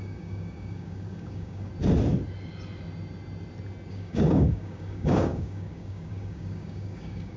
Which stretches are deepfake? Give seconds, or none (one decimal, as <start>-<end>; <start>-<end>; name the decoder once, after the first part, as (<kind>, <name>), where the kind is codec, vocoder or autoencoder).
0.0-1.7 (codec, DAC); 3.9-7.4